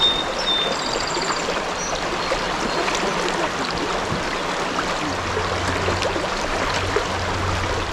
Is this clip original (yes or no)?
yes